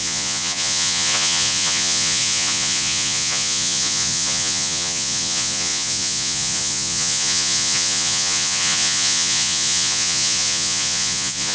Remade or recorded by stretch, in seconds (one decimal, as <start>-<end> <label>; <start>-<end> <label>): 0.0-11.5 remade